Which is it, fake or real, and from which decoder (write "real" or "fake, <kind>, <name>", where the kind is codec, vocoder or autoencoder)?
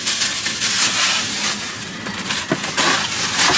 real